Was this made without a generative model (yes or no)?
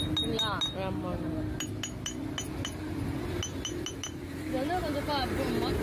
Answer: yes